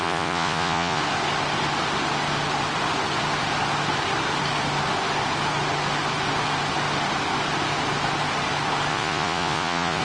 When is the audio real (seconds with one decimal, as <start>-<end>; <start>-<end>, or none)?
1.0-8.9